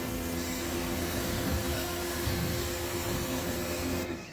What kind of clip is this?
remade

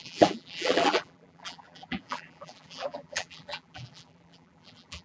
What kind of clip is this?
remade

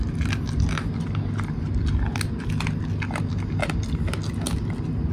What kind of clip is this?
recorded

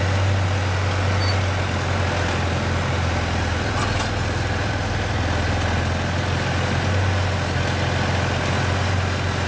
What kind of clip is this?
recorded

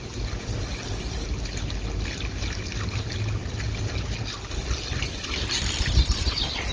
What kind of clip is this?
recorded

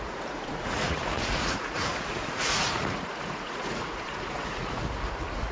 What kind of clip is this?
remade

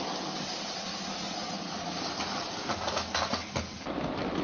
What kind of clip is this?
recorded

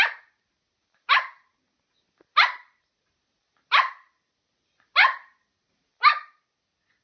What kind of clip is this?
recorded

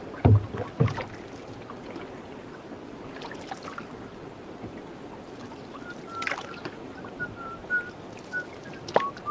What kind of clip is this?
recorded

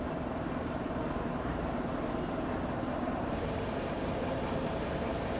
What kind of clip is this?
recorded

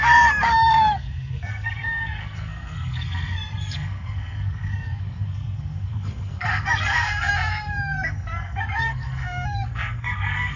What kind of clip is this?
remade